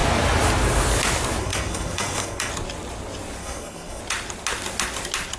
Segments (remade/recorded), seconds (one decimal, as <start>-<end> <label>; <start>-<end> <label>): 0.0-1.4 recorded; 1.4-2.5 remade; 2.5-3.4 recorded; 3.4-4.0 remade; 4.0-5.4 recorded